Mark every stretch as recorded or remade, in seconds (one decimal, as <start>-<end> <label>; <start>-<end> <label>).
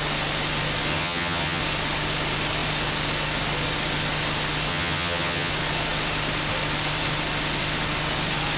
0.0-0.9 recorded; 0.9-1.6 remade; 1.6-4.7 recorded; 4.7-5.5 remade; 5.5-8.6 recorded